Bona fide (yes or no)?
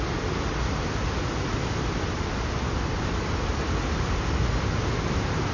yes